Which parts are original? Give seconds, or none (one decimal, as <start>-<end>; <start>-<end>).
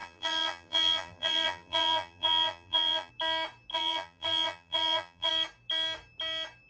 3.1-3.7; 5.3-6.7